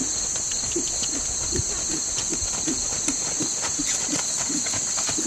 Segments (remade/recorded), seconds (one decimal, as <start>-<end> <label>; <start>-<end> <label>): 0.0-5.3 recorded